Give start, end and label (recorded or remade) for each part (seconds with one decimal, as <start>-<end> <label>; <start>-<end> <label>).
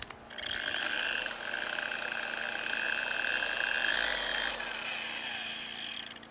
0.0-6.3 recorded